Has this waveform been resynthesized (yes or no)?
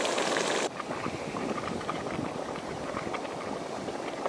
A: no